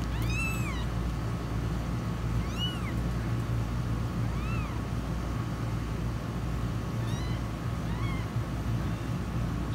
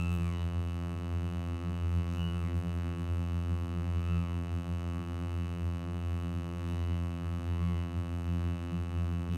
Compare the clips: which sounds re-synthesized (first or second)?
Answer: second